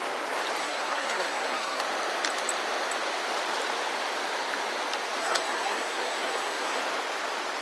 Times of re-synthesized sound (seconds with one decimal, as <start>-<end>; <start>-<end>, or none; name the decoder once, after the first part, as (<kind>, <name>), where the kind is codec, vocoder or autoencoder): 0.6-1.8 (codec, SNAC); 5.2-6.8

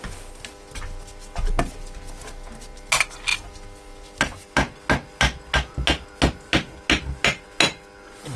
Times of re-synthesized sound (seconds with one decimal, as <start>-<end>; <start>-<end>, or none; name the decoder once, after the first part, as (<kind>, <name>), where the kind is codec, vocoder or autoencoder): none

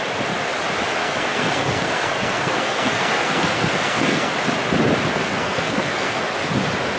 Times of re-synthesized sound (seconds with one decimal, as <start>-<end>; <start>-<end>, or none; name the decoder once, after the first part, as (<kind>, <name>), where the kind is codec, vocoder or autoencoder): 1.0-4.3 (codec, SNAC); 5.1-6.2

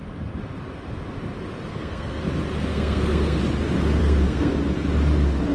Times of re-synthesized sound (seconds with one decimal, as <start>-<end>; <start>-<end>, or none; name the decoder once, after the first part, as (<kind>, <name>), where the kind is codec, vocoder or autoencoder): 1.7-2.2 (codec, SNAC); 2.7-3.4; 4.0-4.5